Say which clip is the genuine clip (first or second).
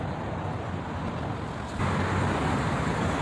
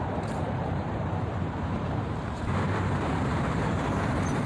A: first